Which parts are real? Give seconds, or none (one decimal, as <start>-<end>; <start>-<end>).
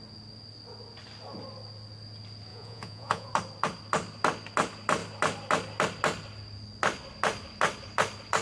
0.0-2.5; 3.3-8.4